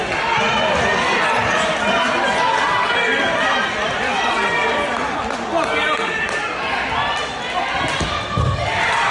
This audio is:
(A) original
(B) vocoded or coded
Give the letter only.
A